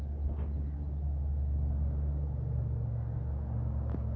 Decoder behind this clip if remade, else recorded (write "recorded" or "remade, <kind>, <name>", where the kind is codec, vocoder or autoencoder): recorded